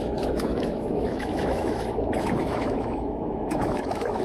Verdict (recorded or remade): remade